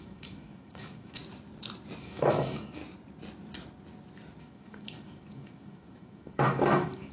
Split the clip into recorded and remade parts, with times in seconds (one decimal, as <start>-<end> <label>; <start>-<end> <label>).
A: 0.0-1.2 remade; 1.2-2.0 recorded; 2.0-2.8 remade; 2.8-4.4 recorded; 4.4-7.1 remade